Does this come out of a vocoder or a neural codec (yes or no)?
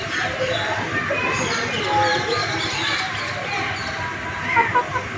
no